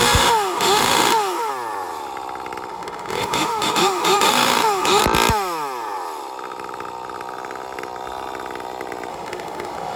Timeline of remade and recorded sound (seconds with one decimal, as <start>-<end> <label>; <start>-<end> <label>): 0.0-1.5 remade; 1.5-2.7 recorded; 2.7-5.0 remade; 5.0-9.1 recorded; 9.1-10.0 remade